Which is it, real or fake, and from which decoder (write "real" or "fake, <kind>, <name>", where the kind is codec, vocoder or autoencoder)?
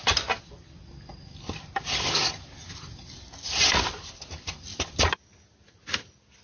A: real